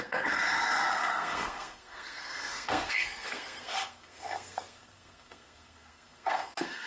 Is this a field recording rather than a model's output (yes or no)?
no